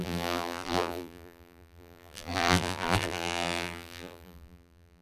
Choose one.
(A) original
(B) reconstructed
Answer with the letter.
B